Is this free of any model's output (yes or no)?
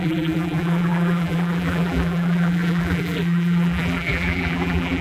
no